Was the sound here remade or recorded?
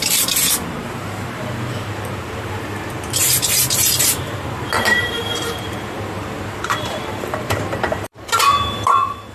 remade